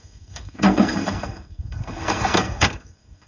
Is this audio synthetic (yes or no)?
yes